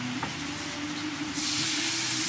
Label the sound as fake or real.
real